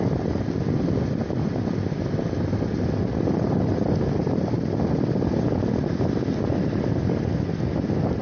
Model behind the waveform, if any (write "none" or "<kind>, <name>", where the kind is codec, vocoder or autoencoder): none